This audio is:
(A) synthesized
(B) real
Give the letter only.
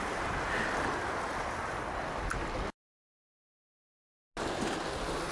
B